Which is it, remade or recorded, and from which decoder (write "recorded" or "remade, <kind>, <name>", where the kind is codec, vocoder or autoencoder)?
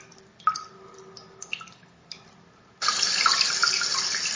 recorded